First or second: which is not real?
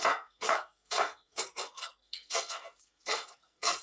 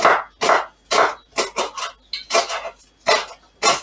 first